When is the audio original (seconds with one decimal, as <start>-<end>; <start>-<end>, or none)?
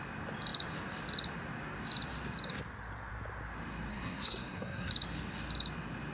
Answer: 0.0-3.9; 4.9-6.1